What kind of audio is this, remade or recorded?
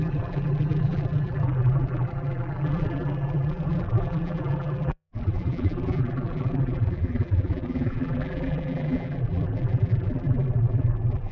remade